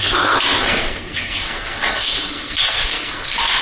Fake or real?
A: fake